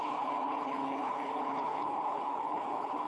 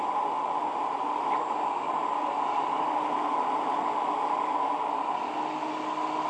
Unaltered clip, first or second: second